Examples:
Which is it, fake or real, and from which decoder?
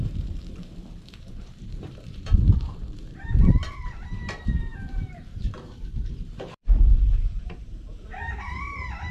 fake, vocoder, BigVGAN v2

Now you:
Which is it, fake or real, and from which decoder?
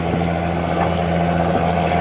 real